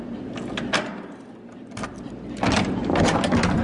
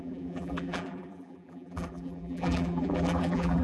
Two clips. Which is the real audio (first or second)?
first